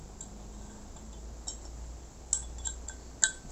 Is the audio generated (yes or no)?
no